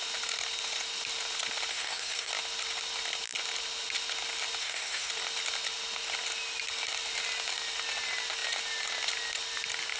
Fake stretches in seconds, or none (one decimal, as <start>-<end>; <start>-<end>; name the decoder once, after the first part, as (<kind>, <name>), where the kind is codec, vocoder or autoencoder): 1.7-2.3 (codec, SNAC); 4.6-5.1